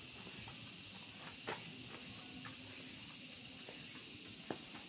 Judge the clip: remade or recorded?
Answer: recorded